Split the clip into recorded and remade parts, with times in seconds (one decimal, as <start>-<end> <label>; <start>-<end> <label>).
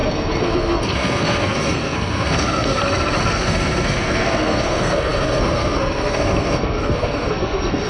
0.0-2.8 remade; 2.8-3.3 recorded; 3.3-7.9 remade